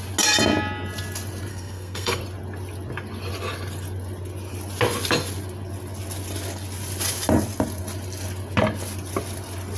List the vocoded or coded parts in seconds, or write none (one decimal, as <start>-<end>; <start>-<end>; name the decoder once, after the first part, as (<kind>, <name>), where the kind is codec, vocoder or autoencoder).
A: 1.5-2.2 (codec, SNAC)